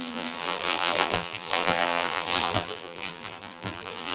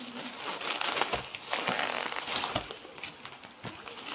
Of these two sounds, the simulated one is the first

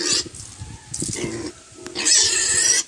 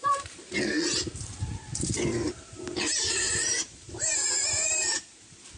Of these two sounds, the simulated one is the second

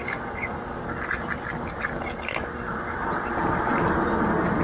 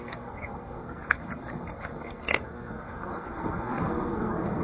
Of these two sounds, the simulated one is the second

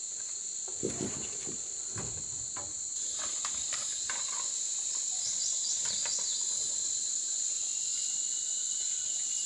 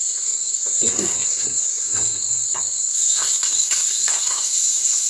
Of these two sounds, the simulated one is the second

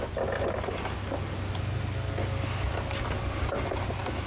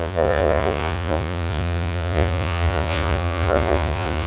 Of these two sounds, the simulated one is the second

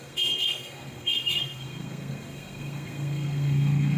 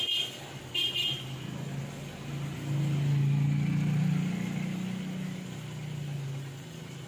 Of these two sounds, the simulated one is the first